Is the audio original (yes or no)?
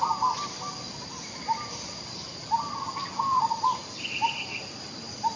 yes